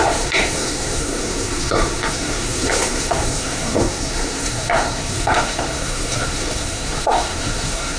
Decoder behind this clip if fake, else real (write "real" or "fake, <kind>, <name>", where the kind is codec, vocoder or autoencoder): fake, codec, SNAC